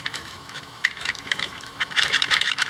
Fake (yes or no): yes